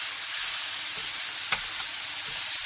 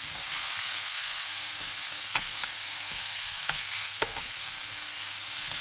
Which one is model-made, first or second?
second